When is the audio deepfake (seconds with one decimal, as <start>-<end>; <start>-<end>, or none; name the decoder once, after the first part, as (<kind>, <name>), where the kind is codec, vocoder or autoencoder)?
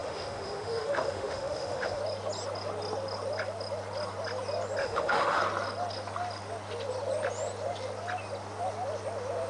0.0-2.0 (autoencoder, DAC-VAE); 4.8-5.4